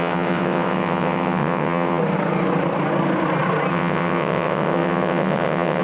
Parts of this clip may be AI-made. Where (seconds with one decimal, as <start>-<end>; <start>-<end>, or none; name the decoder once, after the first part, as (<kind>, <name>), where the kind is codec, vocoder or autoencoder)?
0.0-2.0 (vocoder, WaveNeXt); 3.7-5.8